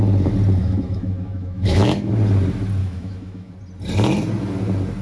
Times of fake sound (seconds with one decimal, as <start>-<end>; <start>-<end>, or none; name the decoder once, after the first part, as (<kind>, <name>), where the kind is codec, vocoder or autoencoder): 0.6-2.1 (autoencoder, DAC-VAE); 2.8-3.5